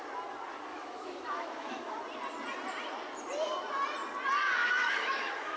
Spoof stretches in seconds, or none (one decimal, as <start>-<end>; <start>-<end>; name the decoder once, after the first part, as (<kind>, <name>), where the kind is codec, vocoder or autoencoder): 0.7-2.0 (autoencoder, DAC-VAE); 4.6-5.6